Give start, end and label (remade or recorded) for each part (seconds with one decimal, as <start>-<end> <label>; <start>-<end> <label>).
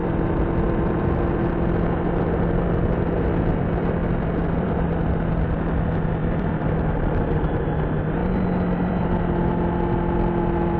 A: 0.0-1.2 remade; 1.2-4.0 recorded; 4.0-5.0 remade; 5.0-6.2 recorded; 6.2-6.7 remade; 6.7-8.2 recorded; 8.2-9.2 remade; 9.2-10.8 recorded